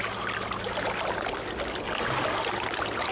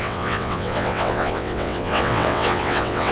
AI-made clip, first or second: second